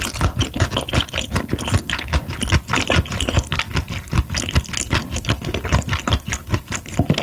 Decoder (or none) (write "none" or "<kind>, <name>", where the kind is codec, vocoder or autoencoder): none